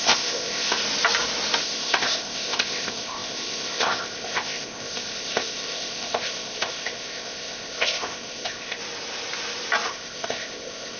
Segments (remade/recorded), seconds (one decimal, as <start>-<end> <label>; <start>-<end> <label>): 0.0-0.8 remade; 0.8-1.6 recorded; 1.6-8.8 remade; 8.8-9.9 recorded; 9.9-11.0 remade